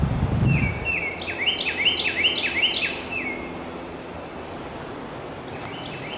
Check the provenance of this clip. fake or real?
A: real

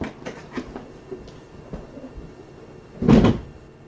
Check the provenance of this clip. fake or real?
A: real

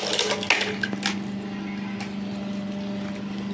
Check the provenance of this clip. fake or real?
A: real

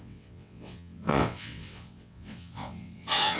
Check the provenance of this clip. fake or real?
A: fake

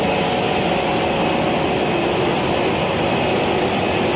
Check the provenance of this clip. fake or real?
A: real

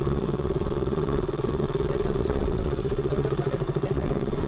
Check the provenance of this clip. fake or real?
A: fake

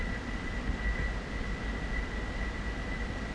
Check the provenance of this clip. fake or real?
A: real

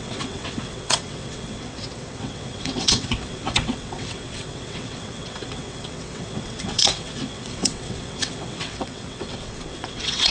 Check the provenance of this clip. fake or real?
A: fake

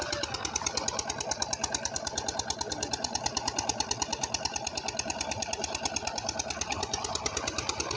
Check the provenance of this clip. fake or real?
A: real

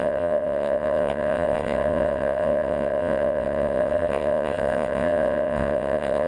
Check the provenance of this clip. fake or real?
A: fake